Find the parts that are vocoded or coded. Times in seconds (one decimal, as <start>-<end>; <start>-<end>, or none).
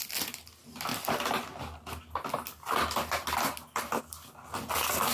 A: none